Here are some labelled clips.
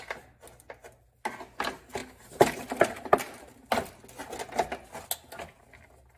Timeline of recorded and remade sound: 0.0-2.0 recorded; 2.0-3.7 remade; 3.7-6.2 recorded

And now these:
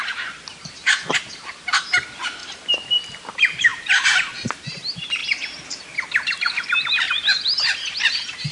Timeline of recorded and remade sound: 0.0-2.4 recorded; 2.4-3.3 remade; 3.3-3.7 recorded; 3.7-4.6 remade; 4.6-8.5 recorded

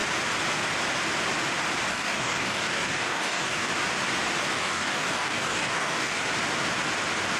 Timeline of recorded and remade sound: 0.0-1.9 recorded; 1.9-3.7 remade; 3.7-4.5 recorded; 4.5-6.2 remade; 6.2-7.4 recorded

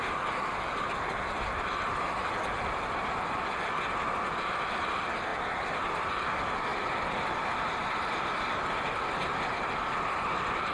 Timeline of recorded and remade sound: 0.0-5.3 recorded; 5.3-6.1 remade; 6.1-6.7 recorded; 6.7-7.9 remade; 7.9-10.7 recorded

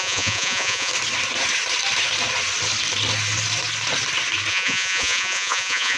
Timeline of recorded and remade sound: 0.0-0.9 remade; 0.9-4.5 recorded; 4.5-6.0 remade

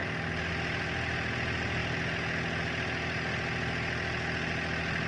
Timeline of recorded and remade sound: 0.0-5.1 recorded

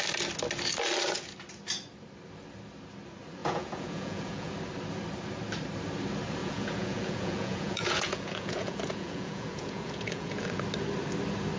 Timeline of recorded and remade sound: 0.0-3.4 recorded; 3.4-4.5 remade; 4.5-6.4 recorded; 6.4-10.6 remade; 10.6-11.6 recorded

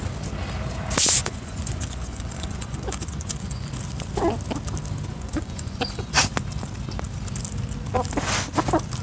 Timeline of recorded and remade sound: 0.0-1.2 recorded; 1.2-3.7 remade; 3.7-5.1 recorded; 5.1-6.2 remade; 6.2-9.0 recorded